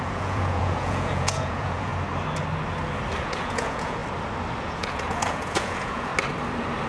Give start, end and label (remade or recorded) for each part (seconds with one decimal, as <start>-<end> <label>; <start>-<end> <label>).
0.0-1.9 remade; 1.9-3.2 recorded; 3.2-4.0 remade; 4.0-4.6 recorded; 4.6-6.1 remade; 6.1-6.9 recorded